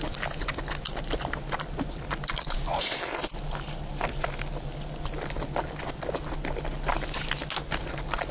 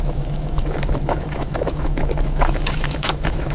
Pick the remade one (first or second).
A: second